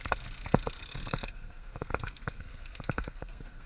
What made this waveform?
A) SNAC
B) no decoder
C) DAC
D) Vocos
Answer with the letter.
A